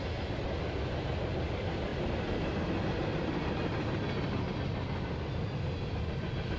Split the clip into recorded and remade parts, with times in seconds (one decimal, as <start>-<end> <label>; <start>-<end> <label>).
0.0-6.6 recorded